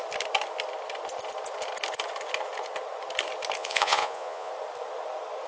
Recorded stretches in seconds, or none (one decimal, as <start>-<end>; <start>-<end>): 0.0-3.6; 4.5-5.5